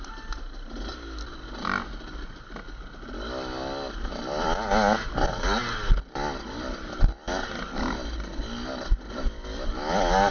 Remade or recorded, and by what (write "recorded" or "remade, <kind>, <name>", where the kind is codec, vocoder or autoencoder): recorded